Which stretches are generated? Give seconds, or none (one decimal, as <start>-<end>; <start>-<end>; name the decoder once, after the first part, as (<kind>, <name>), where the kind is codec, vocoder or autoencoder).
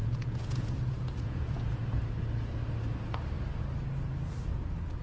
0.0-1.8 (vocoder, Vocos)